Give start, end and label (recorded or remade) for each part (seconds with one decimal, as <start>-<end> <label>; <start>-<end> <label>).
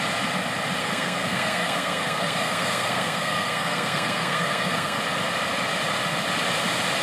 0.0-0.8 recorded; 0.8-5.0 remade; 5.0-7.0 recorded